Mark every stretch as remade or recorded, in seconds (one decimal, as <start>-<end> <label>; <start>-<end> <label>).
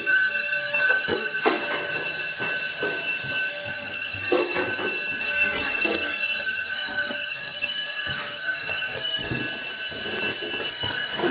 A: 0.0-1.6 remade; 1.6-3.5 recorded; 3.5-4.6 remade; 4.6-5.2 recorded; 5.2-9.4 remade; 9.4-10.7 recorded; 10.7-11.3 remade